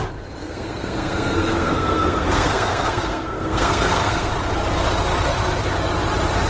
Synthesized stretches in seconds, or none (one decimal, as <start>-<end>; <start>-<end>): 0.4-4.3